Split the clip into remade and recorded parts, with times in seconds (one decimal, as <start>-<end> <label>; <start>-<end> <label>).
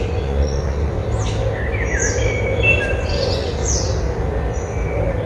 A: 0.0-1.0 remade; 1.0-3.0 recorded; 3.0-3.6 remade; 3.6-5.3 recorded